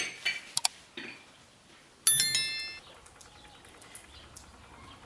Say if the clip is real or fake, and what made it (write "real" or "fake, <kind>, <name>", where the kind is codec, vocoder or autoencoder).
real